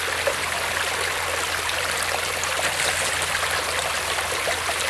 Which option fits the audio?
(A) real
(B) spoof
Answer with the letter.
A